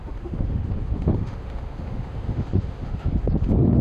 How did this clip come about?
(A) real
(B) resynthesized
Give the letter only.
B